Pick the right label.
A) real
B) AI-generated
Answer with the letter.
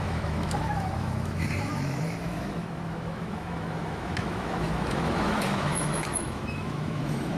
B